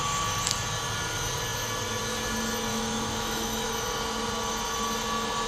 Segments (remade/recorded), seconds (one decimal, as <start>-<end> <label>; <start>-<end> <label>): 0.0-2.7 recorded; 2.7-3.7 remade; 3.7-5.5 recorded